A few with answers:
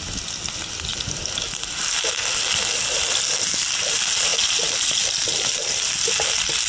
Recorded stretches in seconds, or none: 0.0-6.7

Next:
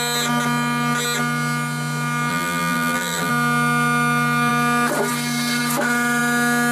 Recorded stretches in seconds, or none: 0.0-2.3; 3.3-6.7

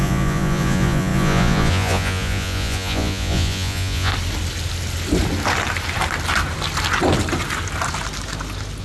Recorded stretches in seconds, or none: 4.1-8.8

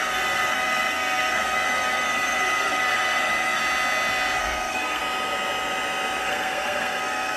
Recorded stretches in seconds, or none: 3.6-4.4; 5.0-6.2

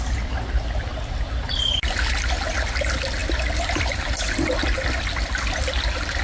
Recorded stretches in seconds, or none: 0.0-6.2

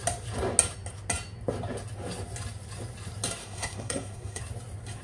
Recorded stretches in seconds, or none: 0.0-3.4; 4.4-5.0

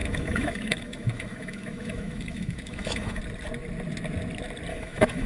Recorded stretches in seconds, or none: 3.2-4.7